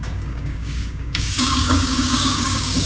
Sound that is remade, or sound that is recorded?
remade